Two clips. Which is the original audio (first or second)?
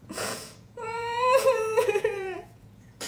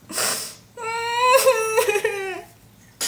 second